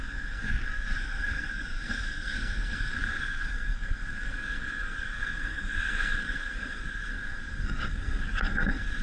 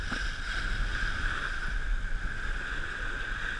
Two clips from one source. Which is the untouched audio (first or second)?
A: second